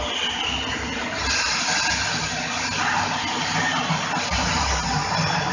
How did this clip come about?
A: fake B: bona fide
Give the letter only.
B